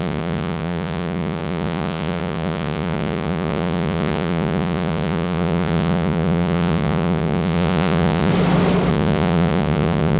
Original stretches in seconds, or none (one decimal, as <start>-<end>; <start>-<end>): 8.3-8.9